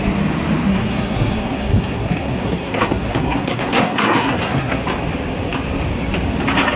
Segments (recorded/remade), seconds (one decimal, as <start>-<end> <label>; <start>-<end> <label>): 0.0-0.7 recorded; 0.7-4.8 remade; 4.8-6.8 recorded